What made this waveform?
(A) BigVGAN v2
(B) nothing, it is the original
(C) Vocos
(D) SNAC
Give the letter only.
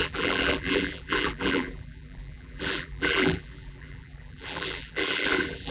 A